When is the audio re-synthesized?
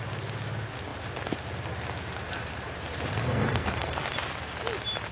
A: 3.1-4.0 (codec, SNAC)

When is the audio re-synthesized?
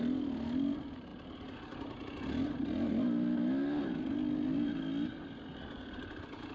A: 5.5-6.1 (vocoder, Vocos)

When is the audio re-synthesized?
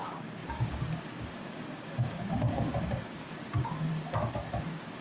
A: 0.0-3.9 (codec, DAC); 4.6-5.0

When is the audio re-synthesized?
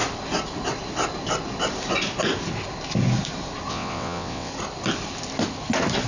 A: 3.7-4.5 (vocoder, WaveNeXt)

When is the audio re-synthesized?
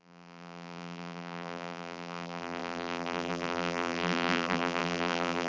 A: 0.0-5.5 (vocoder, BigVGAN v2)